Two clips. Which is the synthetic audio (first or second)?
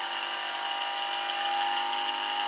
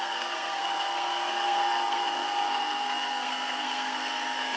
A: second